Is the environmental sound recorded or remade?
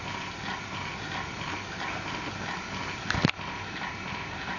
recorded